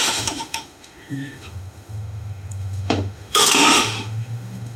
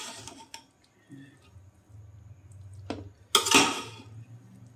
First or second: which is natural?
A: second